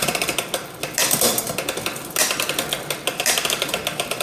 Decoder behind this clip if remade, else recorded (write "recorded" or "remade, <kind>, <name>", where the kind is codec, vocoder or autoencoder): recorded